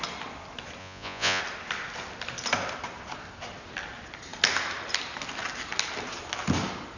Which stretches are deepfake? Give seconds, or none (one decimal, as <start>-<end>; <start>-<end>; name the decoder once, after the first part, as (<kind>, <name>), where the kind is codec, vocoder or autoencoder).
0.8-1.4 (vocoder, Vocos)